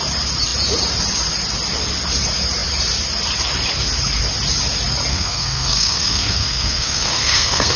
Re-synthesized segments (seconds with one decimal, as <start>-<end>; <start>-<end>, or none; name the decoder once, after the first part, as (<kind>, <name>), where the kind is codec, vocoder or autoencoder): 5.1-7.8 (codec, SNAC)